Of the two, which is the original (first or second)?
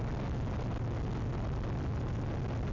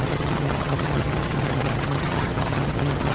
first